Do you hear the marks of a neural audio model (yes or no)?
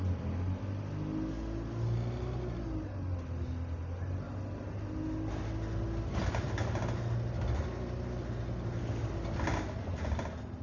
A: no